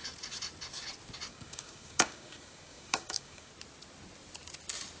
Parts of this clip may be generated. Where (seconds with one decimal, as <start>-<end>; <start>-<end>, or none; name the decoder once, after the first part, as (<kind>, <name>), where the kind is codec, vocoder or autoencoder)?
1.3-3.5 (codec, DAC)